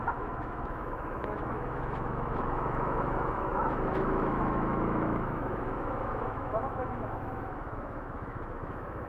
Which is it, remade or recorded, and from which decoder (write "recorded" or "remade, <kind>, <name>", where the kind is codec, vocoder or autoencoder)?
remade, autoencoder, DAC-VAE